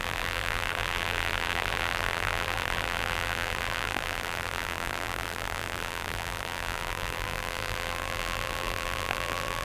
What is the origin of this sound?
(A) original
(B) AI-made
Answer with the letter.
B